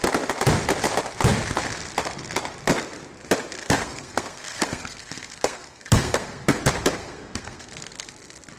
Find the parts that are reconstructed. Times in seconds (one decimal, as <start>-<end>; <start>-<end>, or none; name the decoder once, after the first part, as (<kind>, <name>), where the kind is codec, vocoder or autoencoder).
3.6-6.6 (codec, SNAC); 7.0-8.1